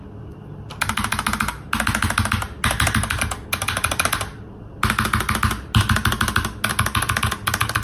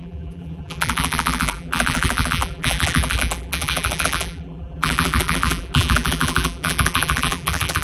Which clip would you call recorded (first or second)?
first